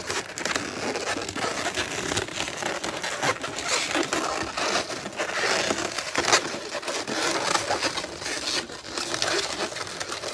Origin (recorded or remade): recorded